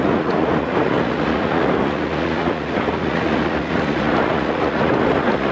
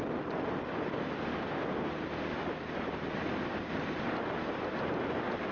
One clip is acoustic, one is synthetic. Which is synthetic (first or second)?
first